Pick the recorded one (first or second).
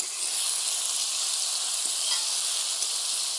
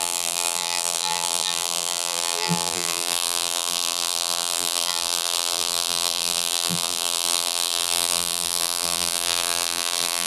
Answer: first